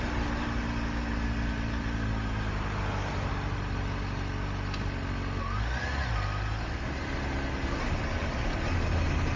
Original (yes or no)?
yes